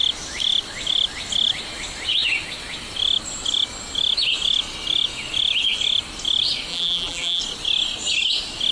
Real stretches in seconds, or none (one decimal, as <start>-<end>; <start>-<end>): 0.0-6.7; 7.4-8.7